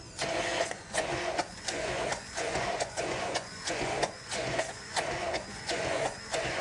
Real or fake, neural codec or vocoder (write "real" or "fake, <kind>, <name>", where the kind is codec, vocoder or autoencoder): fake, vocoder, Vocos